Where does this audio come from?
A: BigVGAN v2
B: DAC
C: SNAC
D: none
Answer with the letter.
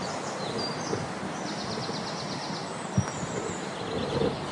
D